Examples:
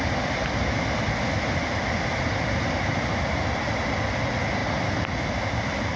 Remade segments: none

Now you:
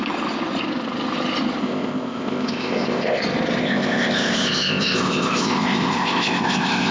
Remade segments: 1.6-3.2 (codec, ZipCodec); 3.6-6.9